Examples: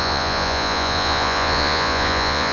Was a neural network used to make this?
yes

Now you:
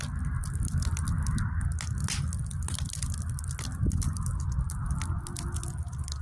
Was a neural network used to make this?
no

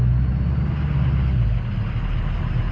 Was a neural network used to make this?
no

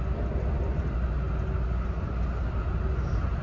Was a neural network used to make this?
no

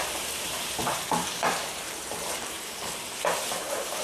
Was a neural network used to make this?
yes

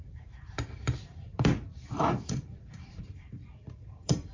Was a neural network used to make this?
yes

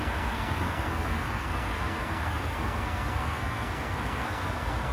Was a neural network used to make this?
yes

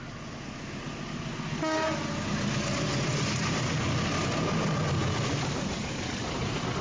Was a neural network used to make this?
no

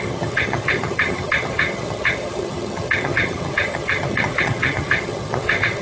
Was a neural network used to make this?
yes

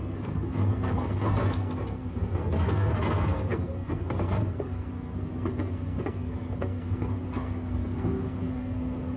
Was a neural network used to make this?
yes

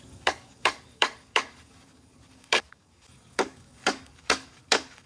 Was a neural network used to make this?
yes